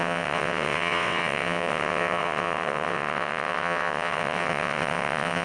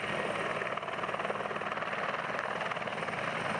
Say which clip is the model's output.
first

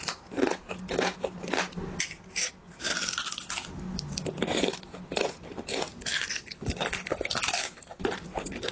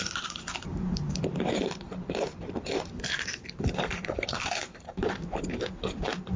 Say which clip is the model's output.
second